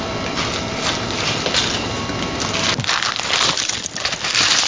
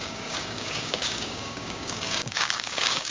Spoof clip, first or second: second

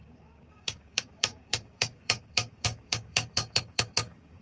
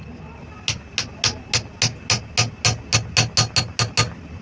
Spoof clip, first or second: first